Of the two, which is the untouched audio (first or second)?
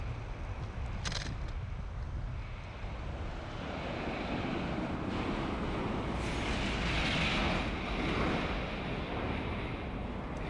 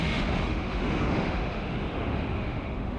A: first